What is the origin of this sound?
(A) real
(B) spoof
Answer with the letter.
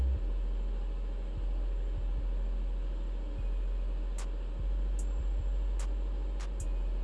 A